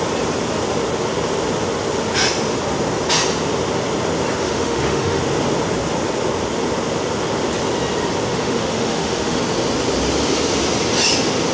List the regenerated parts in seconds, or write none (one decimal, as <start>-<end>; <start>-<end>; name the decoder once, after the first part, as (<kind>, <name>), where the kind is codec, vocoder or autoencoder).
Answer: 4.4-5.2 (autoencoder, DAC-VAE); 8.3-9.4